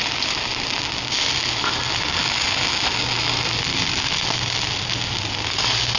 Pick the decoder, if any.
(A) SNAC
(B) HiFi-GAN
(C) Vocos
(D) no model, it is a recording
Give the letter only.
D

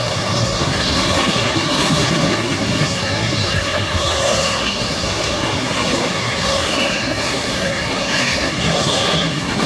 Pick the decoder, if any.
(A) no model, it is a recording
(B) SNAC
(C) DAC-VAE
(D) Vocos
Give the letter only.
B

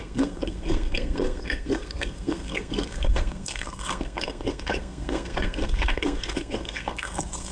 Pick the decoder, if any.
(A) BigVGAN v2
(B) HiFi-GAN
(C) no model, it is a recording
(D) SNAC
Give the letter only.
D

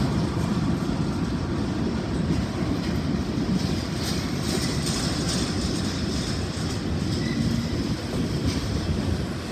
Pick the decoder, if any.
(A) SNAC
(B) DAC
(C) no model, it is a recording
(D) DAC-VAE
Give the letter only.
C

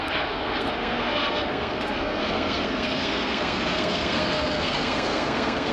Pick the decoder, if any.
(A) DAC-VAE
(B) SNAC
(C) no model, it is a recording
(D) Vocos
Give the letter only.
B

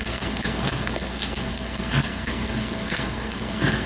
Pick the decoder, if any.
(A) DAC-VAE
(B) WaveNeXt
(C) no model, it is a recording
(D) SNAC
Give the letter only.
D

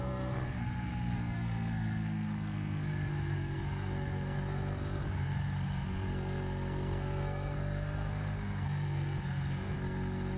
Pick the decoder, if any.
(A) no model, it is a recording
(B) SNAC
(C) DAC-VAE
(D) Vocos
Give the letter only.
B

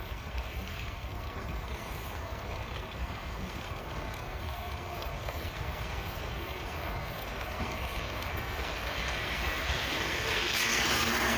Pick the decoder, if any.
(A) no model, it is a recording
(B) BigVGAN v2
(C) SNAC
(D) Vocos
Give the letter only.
C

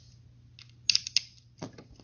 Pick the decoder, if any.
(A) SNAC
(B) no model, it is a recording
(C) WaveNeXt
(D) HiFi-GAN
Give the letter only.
B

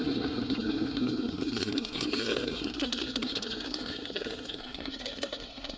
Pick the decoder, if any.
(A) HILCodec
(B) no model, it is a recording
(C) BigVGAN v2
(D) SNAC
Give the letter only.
D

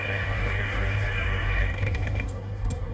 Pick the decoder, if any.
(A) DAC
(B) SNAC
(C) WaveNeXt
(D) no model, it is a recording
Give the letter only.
B